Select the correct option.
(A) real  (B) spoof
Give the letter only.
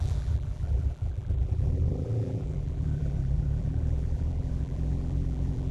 B